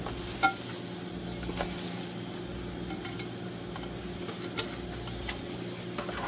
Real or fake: real